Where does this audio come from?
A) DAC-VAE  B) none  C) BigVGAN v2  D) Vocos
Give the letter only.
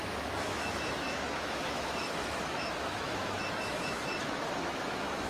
A